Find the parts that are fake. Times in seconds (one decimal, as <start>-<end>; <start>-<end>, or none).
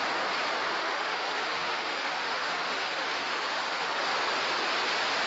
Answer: 0.8-4.0